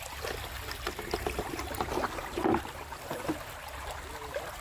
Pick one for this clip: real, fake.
real